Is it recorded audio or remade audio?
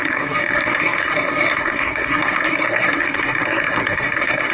remade